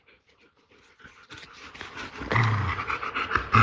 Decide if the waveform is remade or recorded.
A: recorded